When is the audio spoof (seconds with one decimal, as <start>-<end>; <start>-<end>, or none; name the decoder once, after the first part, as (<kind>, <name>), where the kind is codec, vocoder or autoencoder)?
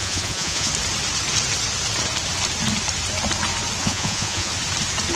0.0-0.7 (vocoder, Vocos); 3.8-4.5